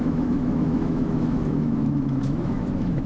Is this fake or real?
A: fake